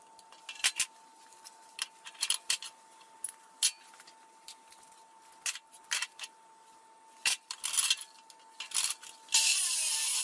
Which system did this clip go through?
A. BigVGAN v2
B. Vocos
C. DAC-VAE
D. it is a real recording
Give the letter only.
D